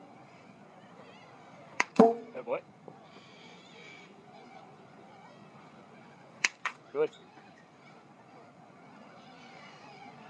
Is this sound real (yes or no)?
no